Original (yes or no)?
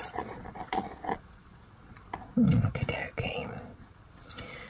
no